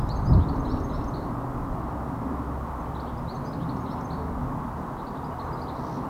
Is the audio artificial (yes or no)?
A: no